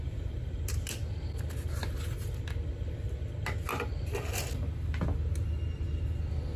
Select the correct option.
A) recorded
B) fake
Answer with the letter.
A